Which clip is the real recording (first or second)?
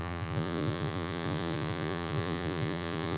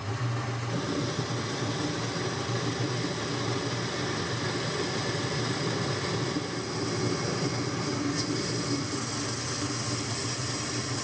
second